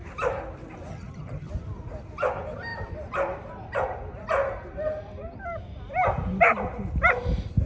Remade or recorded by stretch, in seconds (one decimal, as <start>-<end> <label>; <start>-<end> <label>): 0.0-0.9 recorded; 0.9-1.5 remade; 1.5-7.7 recorded